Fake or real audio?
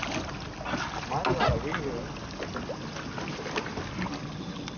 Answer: real